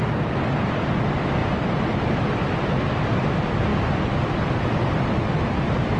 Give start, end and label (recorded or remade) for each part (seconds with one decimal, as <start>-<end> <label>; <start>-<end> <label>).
0.0-1.4 recorded; 1.4-2.5 remade; 2.5-6.0 recorded